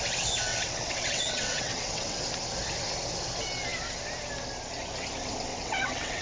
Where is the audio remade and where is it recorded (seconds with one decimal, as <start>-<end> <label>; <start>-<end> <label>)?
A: 0.0-0.5 recorded; 0.5-2.2 remade; 2.2-5.5 recorded; 5.5-6.2 remade